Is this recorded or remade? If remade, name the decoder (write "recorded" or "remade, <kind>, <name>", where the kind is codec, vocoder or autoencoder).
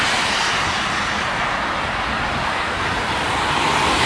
recorded